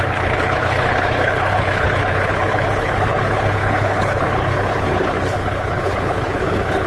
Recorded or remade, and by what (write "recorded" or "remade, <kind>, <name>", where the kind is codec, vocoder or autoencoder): remade, codec, HILCodec